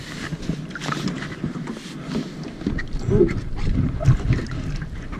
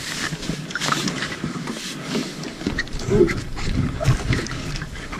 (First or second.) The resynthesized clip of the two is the second